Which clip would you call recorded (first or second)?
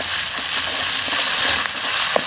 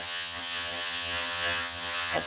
first